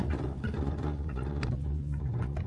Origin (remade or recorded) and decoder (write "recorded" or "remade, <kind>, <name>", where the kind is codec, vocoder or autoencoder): remade, vocoder, Vocos